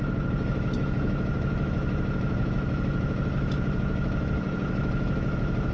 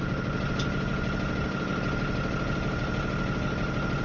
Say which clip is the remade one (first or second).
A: first